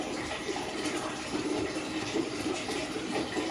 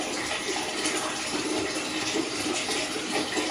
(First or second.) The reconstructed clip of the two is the first